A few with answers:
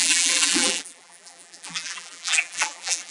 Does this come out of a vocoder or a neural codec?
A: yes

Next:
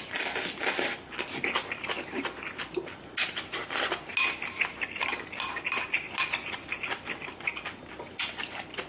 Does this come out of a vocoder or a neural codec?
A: no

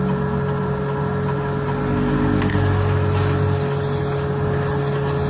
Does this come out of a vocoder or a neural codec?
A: no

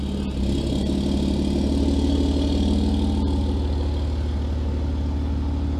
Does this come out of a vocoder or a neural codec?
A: no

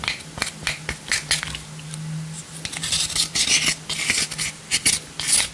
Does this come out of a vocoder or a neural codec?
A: no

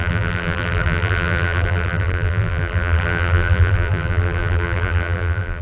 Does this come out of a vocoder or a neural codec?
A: yes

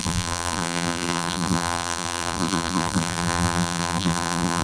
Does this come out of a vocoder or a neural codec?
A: yes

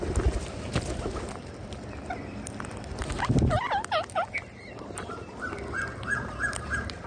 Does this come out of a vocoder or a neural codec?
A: no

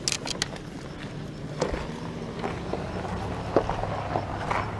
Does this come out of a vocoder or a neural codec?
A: no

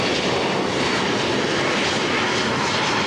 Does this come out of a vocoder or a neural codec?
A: yes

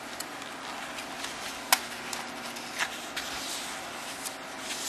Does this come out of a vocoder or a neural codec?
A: no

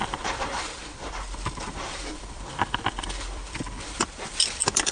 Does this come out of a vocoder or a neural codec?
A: yes